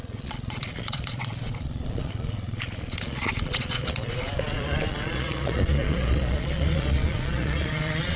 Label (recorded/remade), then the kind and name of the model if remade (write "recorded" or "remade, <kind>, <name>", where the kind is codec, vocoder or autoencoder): remade, vocoder, Vocos